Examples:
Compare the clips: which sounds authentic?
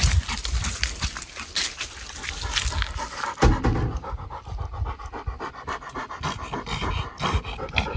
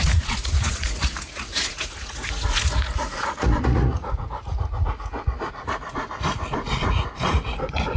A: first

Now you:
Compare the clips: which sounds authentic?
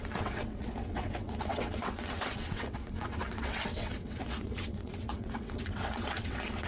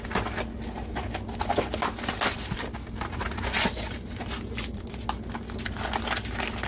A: second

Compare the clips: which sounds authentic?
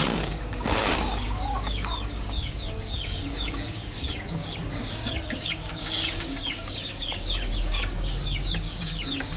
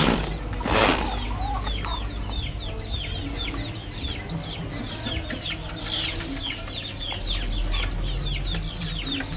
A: second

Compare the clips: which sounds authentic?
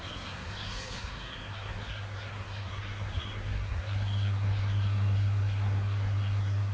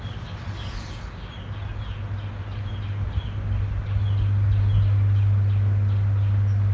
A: second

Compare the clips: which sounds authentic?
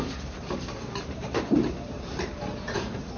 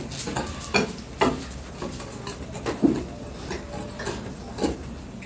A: second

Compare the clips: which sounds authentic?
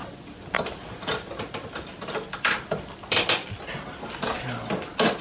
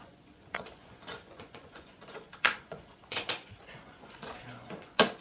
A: first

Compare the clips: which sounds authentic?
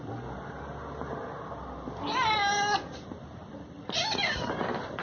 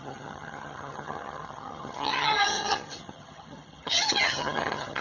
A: first